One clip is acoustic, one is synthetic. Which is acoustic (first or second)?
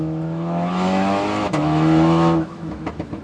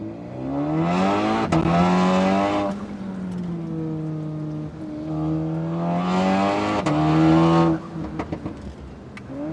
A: second